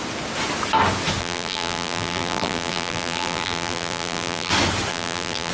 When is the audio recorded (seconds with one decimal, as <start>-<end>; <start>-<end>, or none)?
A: 0.0-1.2; 4.5-4.9